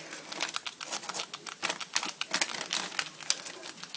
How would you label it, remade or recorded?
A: recorded